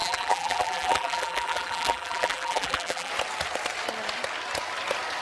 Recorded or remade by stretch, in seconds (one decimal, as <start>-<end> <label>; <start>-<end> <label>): 0.0-3.1 remade; 3.1-5.2 recorded